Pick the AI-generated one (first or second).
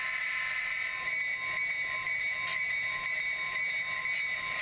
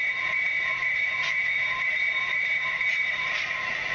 second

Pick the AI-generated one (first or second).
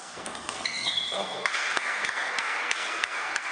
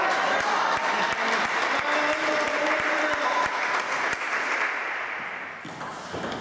first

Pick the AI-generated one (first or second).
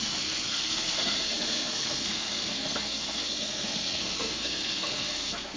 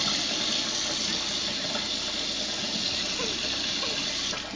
first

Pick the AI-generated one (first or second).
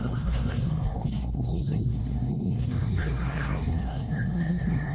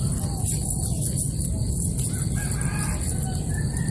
first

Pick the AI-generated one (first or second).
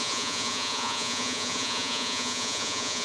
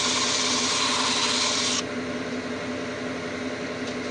first